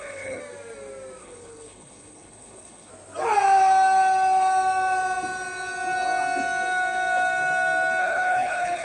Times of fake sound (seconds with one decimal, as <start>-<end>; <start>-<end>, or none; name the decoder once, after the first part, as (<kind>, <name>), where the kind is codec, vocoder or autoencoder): 0.0-0.4 (codec, HILCodec); 1.2-2.9; 8.0-8.8